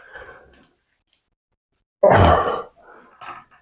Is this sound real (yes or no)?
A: yes